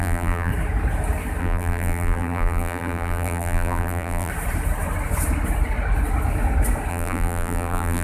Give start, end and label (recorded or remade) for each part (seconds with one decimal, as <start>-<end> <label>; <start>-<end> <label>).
0.0-0.5 remade; 0.5-1.4 recorded; 1.4-4.3 remade; 4.3-6.9 recorded; 6.9-8.0 remade